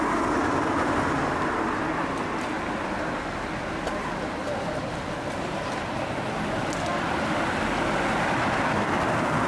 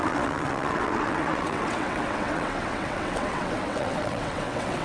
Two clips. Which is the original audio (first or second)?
first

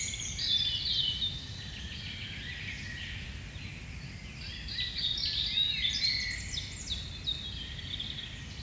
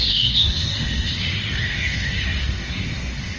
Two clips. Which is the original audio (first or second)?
first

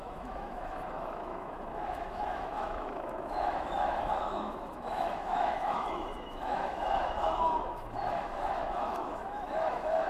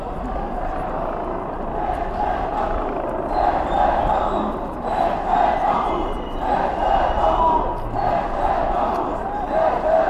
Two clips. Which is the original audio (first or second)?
second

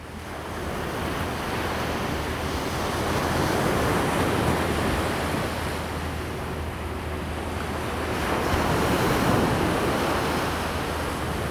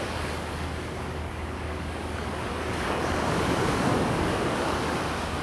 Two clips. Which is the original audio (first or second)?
first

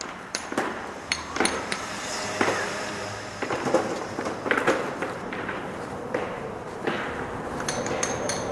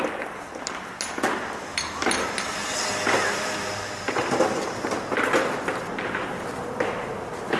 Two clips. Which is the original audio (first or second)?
second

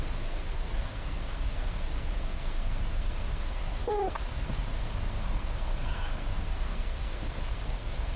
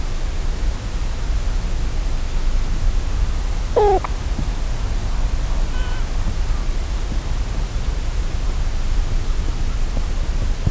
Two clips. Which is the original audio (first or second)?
second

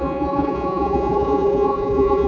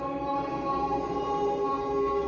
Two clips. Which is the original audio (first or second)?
second